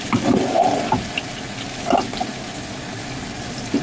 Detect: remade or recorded recorded